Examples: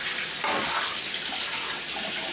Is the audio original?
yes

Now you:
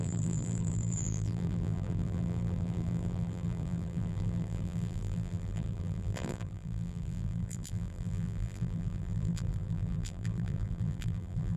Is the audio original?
no